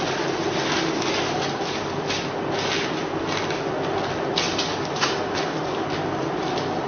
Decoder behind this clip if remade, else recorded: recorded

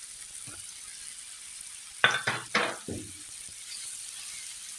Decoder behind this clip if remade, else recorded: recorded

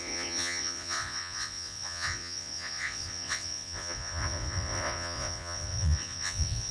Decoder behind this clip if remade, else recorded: remade, vocoder, Vocos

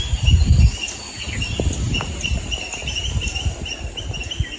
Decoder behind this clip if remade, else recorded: recorded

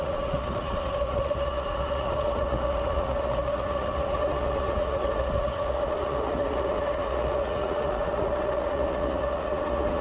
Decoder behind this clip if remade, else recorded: remade, vocoder, Vocos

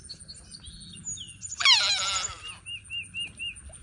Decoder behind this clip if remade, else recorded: recorded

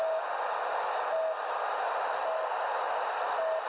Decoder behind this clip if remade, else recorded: recorded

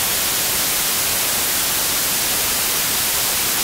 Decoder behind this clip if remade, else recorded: recorded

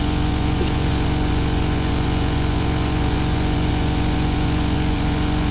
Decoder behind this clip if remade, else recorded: remade, vocoder, Vocos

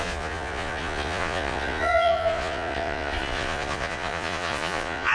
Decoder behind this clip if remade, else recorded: remade, vocoder, Vocos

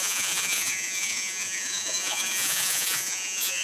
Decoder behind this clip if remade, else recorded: remade, vocoder, Vocos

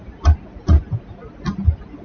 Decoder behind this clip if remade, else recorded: recorded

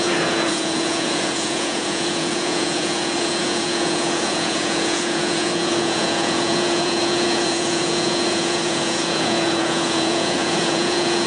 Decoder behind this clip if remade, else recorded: remade, vocoder, Vocos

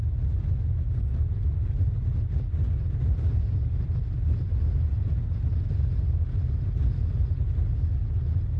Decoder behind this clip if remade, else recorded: recorded